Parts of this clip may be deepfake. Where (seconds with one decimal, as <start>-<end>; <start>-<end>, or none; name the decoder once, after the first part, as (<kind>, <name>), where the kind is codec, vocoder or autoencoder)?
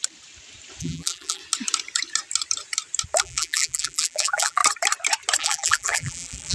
0.8-1.4 (vocoder, BigVGAN v2); 3.2-4.6; 5.4-6.5